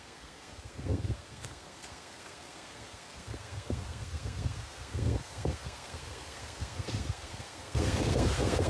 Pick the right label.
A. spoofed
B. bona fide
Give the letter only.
A